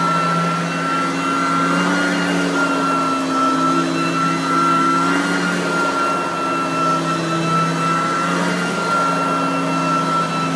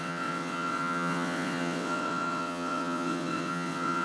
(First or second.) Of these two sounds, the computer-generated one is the second